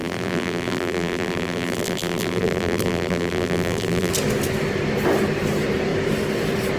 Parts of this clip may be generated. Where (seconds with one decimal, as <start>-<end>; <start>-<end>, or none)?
0.0-4.1